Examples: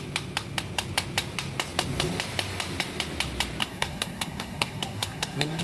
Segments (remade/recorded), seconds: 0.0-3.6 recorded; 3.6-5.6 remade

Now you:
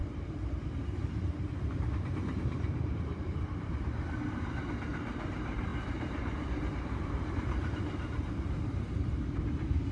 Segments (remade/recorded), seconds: 0.0-9.9 remade

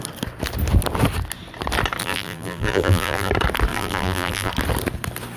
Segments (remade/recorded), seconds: 0.0-2.0 recorded; 2.0-3.3 remade; 3.3-3.7 recorded; 3.7-4.5 remade; 4.5-5.4 recorded

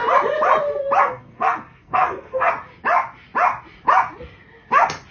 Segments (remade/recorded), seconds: 0.0-1.0 recorded; 1.0-2.5 remade; 2.5-5.1 recorded

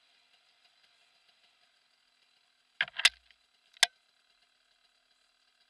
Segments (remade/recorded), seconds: 0.0-5.7 recorded